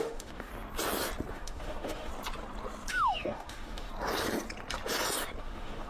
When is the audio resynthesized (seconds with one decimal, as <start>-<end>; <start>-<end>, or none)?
0.0-0.5; 1.3-2.1; 2.9-3.9; 5.4-5.9